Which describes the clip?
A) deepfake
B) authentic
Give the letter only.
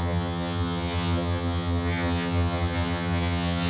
A